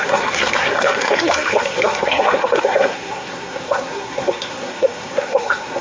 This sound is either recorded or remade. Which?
remade